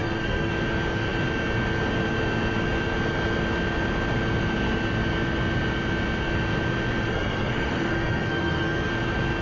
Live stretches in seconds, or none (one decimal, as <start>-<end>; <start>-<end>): 0.5-7.1; 8.9-9.4